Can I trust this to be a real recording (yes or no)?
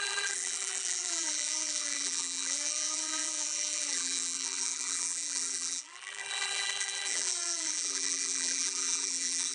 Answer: no